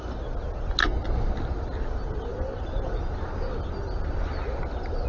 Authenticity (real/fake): real